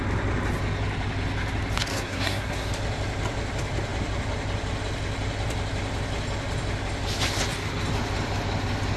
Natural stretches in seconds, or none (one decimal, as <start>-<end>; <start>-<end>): 0.0-1.9; 2.7-9.0